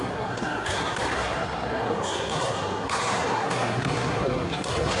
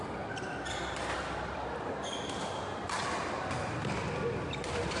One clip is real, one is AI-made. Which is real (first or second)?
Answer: second